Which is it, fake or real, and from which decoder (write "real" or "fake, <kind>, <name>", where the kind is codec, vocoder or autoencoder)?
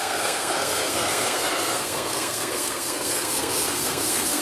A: fake, codec, SNAC